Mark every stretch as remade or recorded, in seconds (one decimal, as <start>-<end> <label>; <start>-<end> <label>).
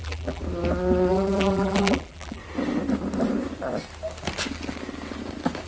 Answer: 0.0-0.4 remade; 0.4-1.1 recorded; 1.1-2.4 remade; 2.4-5.7 recorded